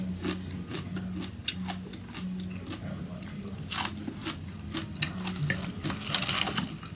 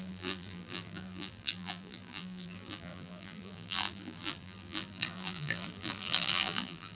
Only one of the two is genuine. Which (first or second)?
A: first